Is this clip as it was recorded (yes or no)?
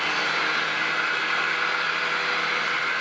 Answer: yes